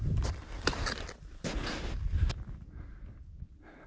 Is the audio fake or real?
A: real